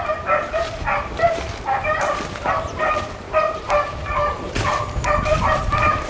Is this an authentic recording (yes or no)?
no